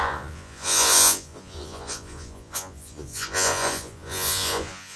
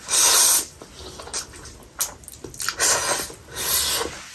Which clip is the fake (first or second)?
first